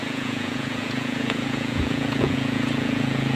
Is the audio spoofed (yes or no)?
yes